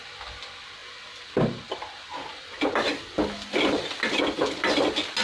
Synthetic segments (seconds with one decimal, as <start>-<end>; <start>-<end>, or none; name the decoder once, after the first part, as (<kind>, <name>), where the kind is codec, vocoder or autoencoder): none